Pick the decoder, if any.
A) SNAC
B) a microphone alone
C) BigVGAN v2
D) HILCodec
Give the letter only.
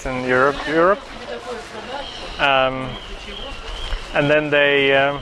B